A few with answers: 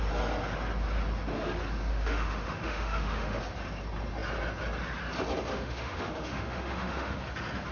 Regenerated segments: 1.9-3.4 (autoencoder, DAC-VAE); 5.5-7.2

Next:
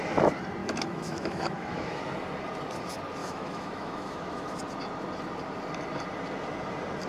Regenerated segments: 0.6-2.0 (autoencoder, DAC-VAE); 3.2-4.6

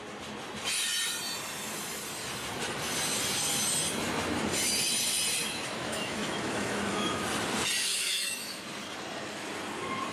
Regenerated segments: 5.4-7.2 (autoencoder, DAC-VAE); 7.8-8.6

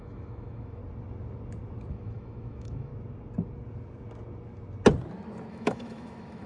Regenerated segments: 0.0-0.8 (autoencoder, DAC-VAE); 1.9-2.9; 5.5-6.5